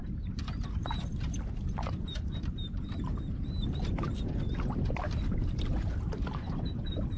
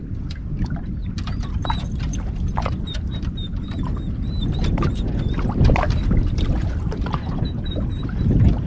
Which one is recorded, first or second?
second